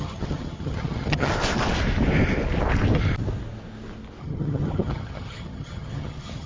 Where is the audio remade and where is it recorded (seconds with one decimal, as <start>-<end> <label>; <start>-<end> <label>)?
0.0-1.3 remade; 1.3-4.2 recorded; 4.2-6.5 remade